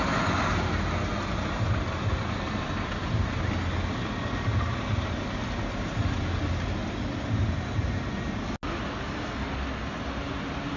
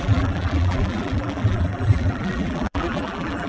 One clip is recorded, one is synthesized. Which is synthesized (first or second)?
second